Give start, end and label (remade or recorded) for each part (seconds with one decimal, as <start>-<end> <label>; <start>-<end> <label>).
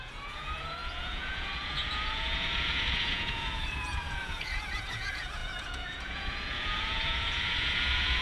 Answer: 0.0-8.2 remade